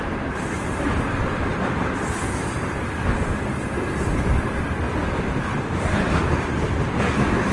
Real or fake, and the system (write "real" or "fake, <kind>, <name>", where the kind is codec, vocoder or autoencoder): fake, vocoder, BigVGAN v2